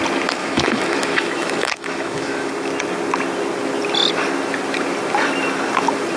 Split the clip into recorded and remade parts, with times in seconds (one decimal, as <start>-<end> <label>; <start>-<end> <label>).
0.0-0.4 recorded; 0.4-2.5 remade; 2.5-6.2 recorded